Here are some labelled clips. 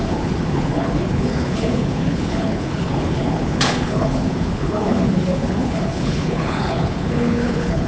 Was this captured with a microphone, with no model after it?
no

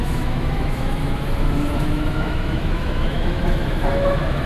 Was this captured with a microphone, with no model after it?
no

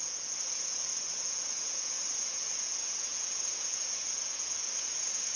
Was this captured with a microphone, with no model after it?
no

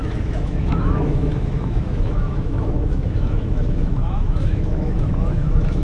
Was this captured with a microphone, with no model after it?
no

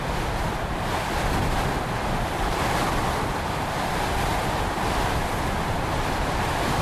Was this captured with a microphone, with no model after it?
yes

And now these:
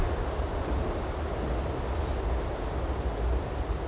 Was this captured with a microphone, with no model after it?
yes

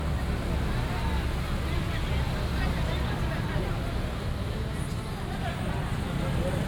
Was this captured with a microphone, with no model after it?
yes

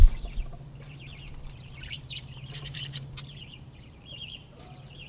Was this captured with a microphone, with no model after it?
no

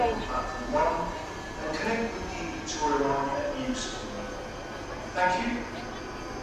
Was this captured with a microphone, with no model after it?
yes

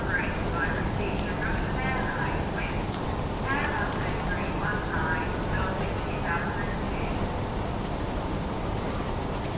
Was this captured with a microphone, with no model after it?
yes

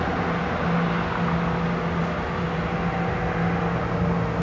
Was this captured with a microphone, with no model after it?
yes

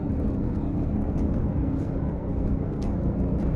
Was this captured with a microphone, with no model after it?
no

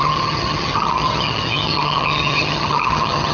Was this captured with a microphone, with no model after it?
no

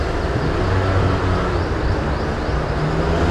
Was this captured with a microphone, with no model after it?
yes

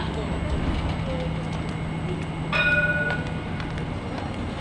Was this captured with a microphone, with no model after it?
yes